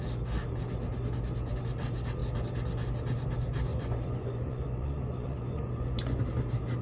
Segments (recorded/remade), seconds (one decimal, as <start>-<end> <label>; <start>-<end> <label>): 0.0-3.7 recorded; 3.7-6.2 remade; 6.2-6.8 recorded